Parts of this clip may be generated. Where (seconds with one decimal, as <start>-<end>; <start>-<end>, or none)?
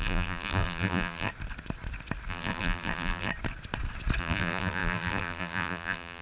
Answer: 0.0-1.3; 2.3-3.3; 4.2-6.2